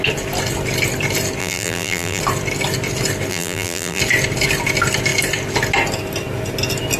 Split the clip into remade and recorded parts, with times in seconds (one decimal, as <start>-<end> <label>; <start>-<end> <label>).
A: 0.0-1.4 recorded; 1.4-2.2 remade; 2.2-3.3 recorded; 3.3-4.0 remade; 4.0-7.0 recorded